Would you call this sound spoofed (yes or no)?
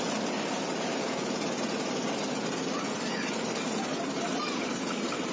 no